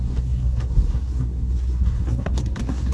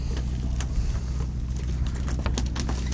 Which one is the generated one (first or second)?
first